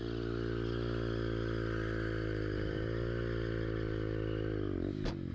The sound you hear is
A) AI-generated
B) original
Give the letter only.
B